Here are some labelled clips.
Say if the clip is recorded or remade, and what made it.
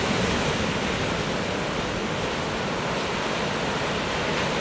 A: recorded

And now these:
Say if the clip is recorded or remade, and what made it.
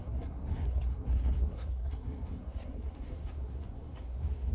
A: remade, codec, SNAC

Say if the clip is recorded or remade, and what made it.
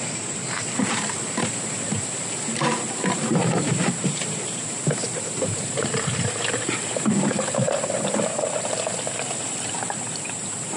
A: remade, vocoder, BigVGAN v2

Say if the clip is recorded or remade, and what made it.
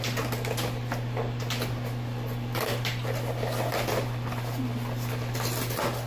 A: recorded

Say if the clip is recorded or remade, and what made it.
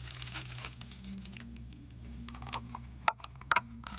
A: recorded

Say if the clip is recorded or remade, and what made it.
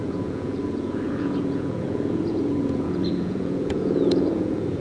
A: remade, vocoder, Vocos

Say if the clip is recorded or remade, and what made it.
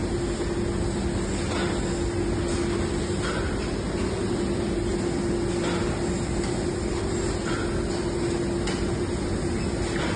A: recorded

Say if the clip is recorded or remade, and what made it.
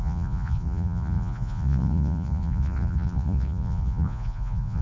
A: remade, vocoder, Vocos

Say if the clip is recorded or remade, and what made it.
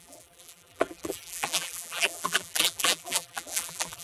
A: remade, vocoder, BigVGAN v2